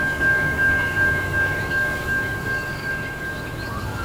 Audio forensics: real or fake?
fake